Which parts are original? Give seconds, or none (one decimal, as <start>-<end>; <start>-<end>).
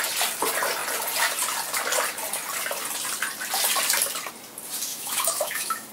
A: 0.0-4.9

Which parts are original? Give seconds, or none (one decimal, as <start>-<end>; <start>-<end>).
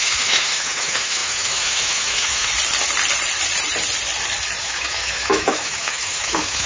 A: 2.5-4.6